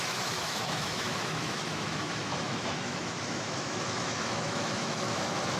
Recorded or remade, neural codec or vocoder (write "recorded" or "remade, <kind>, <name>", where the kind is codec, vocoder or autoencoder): remade, autoencoder, DAC-VAE